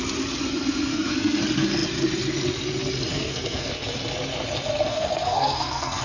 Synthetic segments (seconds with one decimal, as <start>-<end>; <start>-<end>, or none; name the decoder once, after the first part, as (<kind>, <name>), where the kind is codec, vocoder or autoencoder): 0.9-1.4 (codec, SNAC); 3.1-3.7; 4.9-6.0